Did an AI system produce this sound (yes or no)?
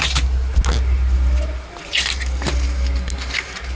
no